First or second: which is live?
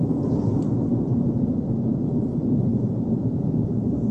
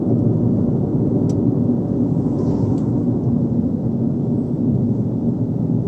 second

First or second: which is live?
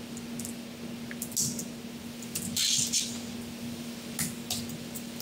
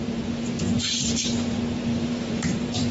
first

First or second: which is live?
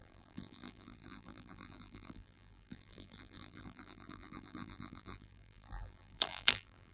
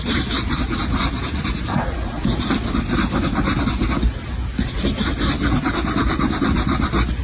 second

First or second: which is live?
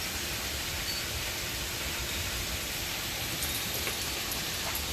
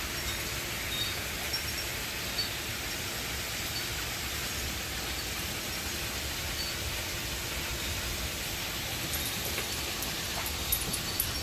second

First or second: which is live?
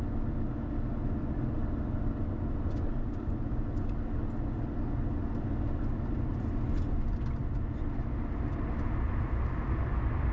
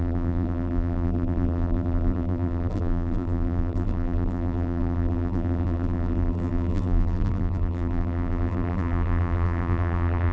first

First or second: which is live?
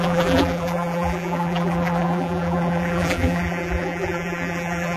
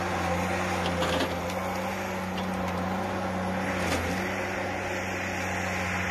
second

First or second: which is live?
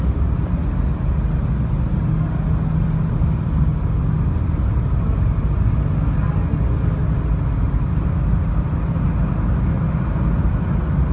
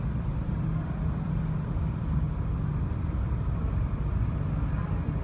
first